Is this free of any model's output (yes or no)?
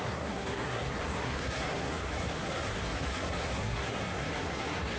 no